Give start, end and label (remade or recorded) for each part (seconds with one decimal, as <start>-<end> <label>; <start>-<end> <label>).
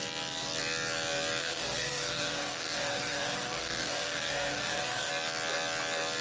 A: 0.0-1.4 recorded; 1.4-5.1 remade; 5.1-6.2 recorded